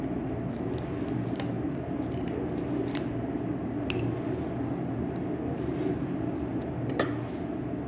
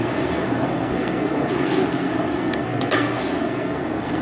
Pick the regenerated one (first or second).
second